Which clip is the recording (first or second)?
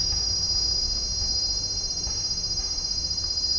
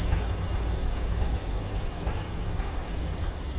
first